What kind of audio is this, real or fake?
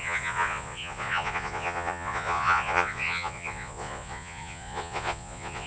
fake